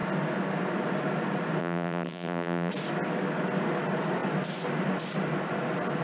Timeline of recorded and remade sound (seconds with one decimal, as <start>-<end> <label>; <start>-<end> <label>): 0.0-1.6 recorded; 1.6-2.7 remade; 2.7-6.0 recorded